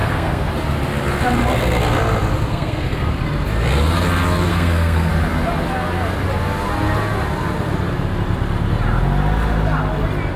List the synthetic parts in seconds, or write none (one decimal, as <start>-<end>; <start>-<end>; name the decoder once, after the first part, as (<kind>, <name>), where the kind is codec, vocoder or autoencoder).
0.0-0.5 (codec, SNAC); 2.5-3.1; 4.5-5.1